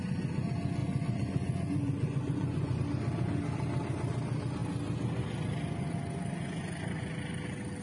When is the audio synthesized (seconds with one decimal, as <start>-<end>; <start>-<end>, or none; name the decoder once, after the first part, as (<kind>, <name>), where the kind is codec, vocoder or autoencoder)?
0.8-2.8 (vocoder, Vocos)